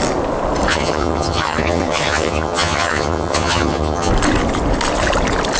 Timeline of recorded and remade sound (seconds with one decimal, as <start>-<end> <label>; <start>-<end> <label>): 0.0-0.7 recorded; 0.7-4.1 remade; 4.1-5.6 recorded